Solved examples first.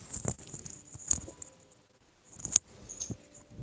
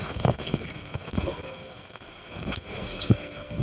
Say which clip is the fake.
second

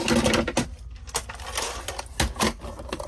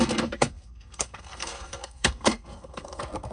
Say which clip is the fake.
second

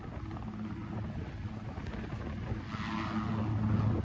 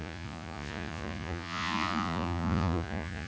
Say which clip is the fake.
second